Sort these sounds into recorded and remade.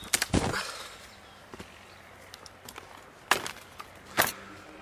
recorded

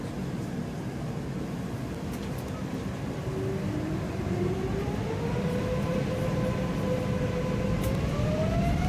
recorded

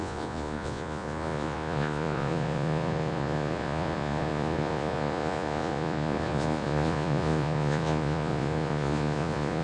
remade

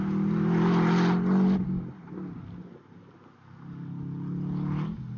recorded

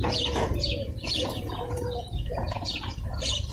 remade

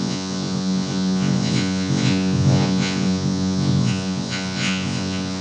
remade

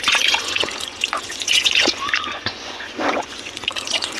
remade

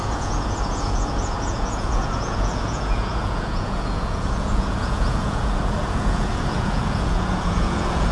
remade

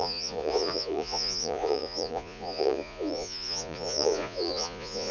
remade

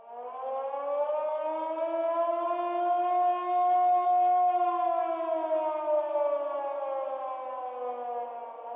recorded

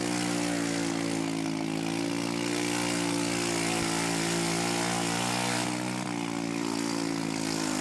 recorded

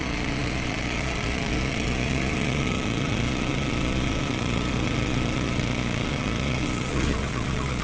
remade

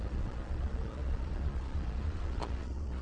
remade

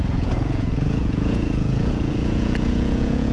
remade